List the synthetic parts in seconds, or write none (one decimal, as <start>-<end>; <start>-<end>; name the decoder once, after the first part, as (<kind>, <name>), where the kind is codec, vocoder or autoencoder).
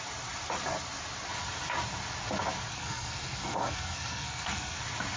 2.7-4.8 (codec, SNAC)